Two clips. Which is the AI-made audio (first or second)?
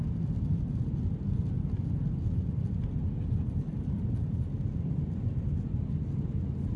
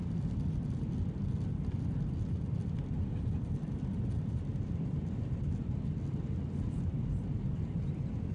second